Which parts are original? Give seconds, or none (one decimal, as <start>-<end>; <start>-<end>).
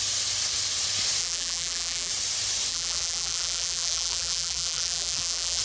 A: 0.0-1.2; 2.1-2.7